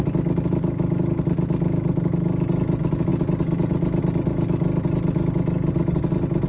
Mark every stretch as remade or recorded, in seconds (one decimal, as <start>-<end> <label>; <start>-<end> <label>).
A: 0.0-6.5 recorded